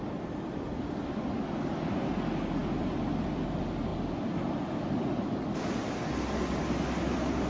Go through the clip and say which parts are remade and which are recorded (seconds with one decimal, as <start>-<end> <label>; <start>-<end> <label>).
0.0-7.5 recorded

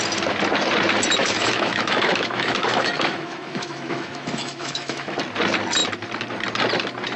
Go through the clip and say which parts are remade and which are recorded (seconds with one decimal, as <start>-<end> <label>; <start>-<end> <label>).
0.0-1.2 recorded; 1.2-5.2 remade; 5.2-7.2 recorded

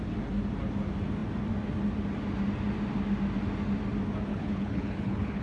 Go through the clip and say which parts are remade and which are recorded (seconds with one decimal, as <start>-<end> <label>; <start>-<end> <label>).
0.0-4.3 recorded; 4.3-5.4 remade

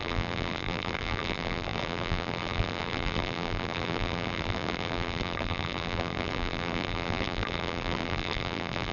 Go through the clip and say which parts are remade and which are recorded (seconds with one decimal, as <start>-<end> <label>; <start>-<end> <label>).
0.0-8.9 remade

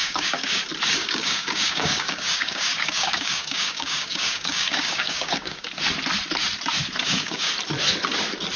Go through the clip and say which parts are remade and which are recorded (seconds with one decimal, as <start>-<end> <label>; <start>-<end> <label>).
0.0-0.6 remade; 0.6-1.0 recorded; 1.0-5.7 remade; 5.7-7.0 recorded; 7.0-7.5 remade; 7.5-8.6 recorded

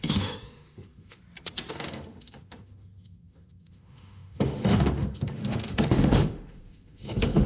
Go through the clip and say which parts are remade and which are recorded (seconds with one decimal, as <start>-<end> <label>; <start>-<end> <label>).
0.0-1.2 remade; 1.2-1.7 recorded; 1.7-7.5 remade

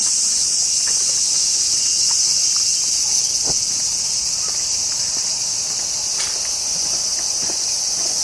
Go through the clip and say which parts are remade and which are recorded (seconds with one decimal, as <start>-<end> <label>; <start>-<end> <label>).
0.0-2.4 remade; 2.4-6.6 recorded; 6.6-8.2 remade